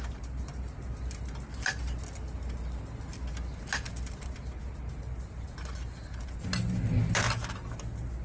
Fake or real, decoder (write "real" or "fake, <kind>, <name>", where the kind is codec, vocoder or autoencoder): real